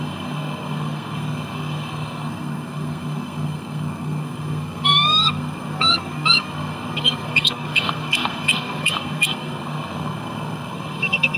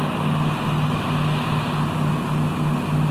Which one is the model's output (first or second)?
first